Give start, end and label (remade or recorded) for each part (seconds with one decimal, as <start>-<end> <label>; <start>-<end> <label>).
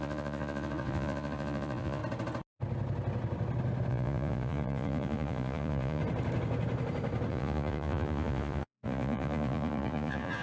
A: 0.0-2.0 remade; 2.0-3.9 recorded; 3.9-6.0 remade; 6.0-7.3 recorded; 7.3-10.4 remade